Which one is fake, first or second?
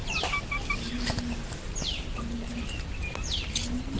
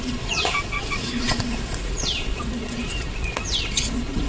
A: second